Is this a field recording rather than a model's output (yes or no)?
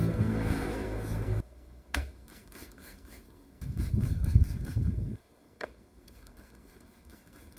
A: no